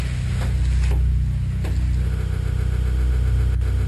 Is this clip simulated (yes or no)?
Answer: no